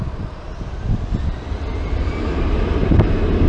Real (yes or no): yes